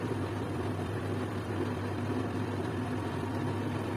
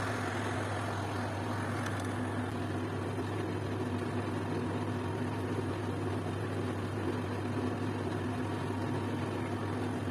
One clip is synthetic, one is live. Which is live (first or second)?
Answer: second